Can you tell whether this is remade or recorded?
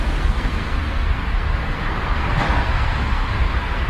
remade